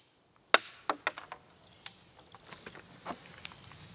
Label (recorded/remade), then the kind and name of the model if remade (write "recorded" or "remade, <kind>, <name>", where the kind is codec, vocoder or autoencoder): recorded